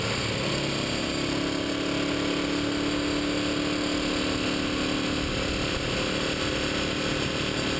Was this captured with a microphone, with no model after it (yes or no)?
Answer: yes